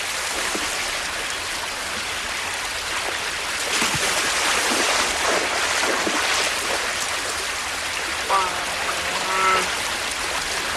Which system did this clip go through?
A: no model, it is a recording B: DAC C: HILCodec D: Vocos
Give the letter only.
A